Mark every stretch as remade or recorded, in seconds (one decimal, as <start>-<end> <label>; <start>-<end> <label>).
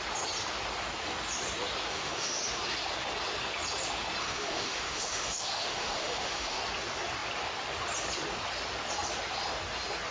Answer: 0.0-1.9 recorded; 1.9-2.4 remade; 2.4-4.2 recorded; 4.2-6.6 remade; 6.6-10.1 recorded